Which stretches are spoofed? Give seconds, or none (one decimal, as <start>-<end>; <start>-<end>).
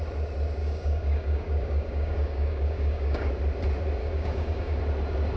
0.6-3.3; 4.0-4.8